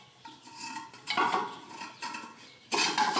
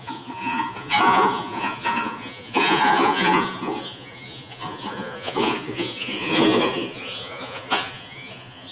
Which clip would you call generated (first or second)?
second